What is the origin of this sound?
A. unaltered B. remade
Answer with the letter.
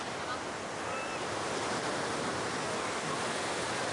A